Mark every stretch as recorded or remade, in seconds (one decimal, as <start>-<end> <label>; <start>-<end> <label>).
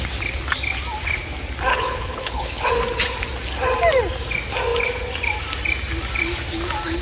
0.0-1.7 recorded; 1.7-2.7 remade; 2.7-7.0 recorded